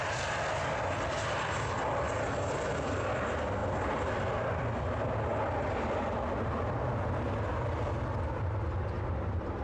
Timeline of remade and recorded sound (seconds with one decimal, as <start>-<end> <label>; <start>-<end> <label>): 0.0-9.6 recorded